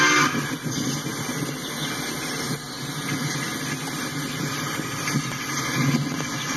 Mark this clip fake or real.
real